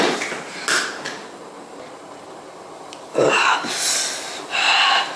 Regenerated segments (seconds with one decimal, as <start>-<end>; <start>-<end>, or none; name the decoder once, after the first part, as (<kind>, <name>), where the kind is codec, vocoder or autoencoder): 3.1-3.7 (codec, DAC)